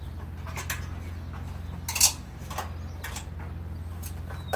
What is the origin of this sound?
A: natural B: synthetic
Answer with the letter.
A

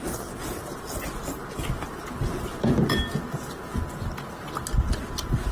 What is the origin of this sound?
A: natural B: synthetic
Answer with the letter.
A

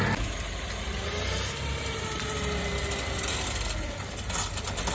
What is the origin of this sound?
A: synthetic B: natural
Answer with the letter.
B